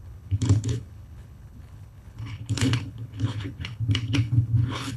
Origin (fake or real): fake